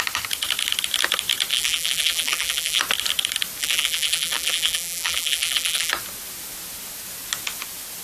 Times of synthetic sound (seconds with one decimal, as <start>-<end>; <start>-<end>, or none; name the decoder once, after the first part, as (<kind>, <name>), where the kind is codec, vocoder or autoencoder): 1.5-2.8 (vocoder, BigVGAN v2); 3.6-5.9